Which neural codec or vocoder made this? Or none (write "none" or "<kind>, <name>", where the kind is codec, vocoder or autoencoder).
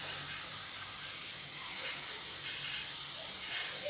none